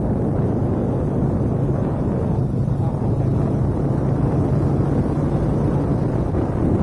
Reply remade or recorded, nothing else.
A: recorded